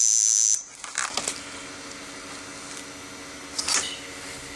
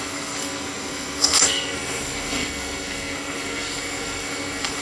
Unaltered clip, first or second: first